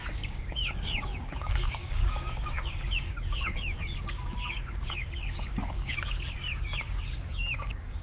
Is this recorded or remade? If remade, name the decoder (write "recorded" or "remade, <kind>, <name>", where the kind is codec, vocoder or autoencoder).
remade, codec, DAC